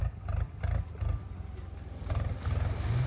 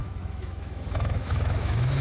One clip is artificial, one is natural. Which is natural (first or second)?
first